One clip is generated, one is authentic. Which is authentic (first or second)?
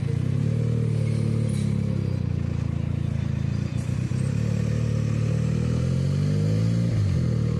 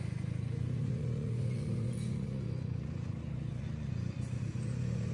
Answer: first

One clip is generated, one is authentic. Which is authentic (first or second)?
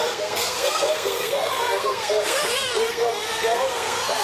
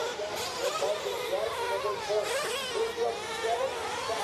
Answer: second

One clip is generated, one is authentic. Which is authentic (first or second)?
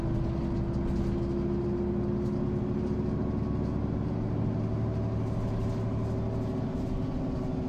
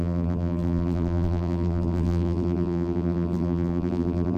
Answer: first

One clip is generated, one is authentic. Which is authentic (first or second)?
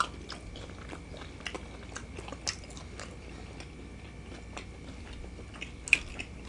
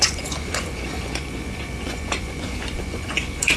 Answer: first